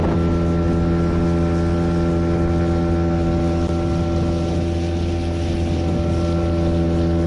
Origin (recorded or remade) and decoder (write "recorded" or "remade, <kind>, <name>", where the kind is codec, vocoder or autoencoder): recorded